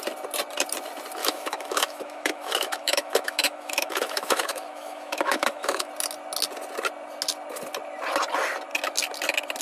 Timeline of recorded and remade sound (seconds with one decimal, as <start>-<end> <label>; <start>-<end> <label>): 0.0-1.2 recorded; 1.2-5.9 remade; 5.9-9.6 recorded